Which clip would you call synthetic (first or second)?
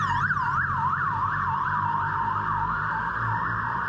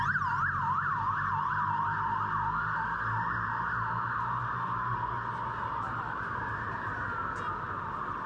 first